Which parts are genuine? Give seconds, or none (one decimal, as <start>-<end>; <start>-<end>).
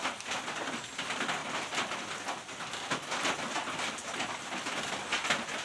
0.0-5.6